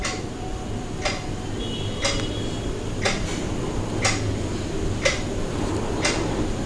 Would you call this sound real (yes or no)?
yes